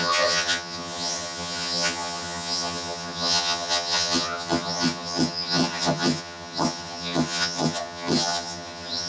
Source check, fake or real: fake